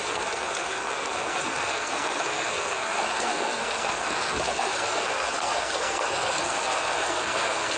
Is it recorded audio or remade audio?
remade